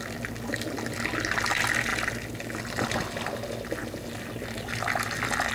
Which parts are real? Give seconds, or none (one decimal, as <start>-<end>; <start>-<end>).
0.0-5.5